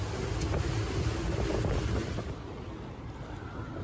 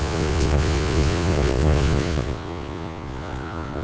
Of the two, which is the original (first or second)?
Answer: first